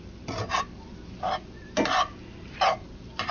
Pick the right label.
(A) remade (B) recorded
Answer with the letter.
B